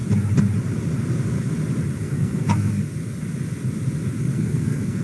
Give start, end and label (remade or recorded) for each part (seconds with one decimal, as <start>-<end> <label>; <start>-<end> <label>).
0.0-2.0 recorded; 2.0-2.8 remade; 2.8-4.2 recorded; 4.2-5.0 remade